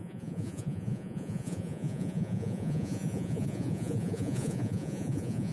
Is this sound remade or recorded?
remade